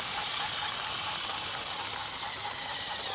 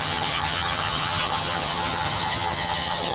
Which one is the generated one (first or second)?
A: second